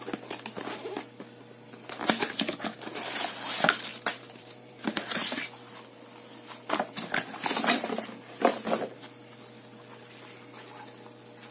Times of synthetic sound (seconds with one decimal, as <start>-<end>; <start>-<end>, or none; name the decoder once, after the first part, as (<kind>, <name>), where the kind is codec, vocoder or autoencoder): 3.9-5.4 (vocoder, BigVGAN v2)